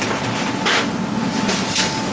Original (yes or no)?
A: yes